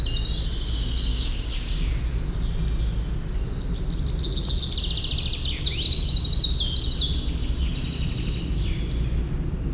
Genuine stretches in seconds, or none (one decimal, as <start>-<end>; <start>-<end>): 0.0-1.1; 2.0-9.7